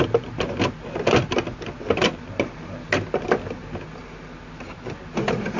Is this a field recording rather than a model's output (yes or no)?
yes